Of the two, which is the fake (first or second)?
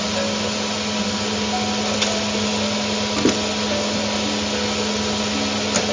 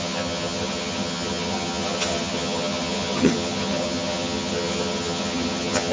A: second